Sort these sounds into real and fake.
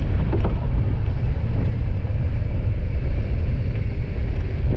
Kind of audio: real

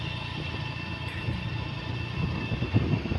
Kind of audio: real